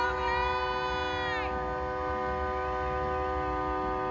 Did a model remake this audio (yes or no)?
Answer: no